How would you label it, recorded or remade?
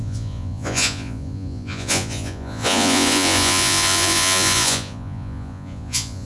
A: remade